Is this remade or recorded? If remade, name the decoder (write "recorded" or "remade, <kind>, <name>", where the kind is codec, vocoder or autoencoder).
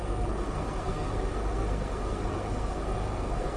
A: remade, codec, SNAC